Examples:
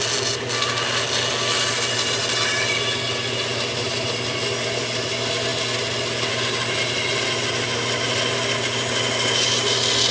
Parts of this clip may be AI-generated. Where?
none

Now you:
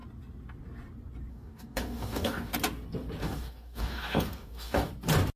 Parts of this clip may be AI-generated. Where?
1.3-2.5 (codec, DAC); 3.2-4.9

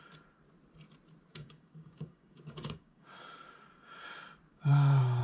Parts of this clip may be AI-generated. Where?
1.3-3.2 (codec, DAC); 4.5-5.2

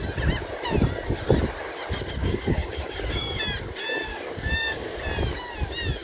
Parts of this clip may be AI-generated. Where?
2.2-3.4 (codec, DAC); 4.1-5.0

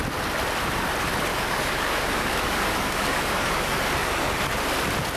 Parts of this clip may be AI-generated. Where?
1.3-4.4 (codec, DAC)

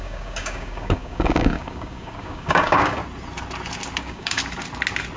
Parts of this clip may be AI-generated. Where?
0.0-3.0 (codec, DAC); 4.0-4.4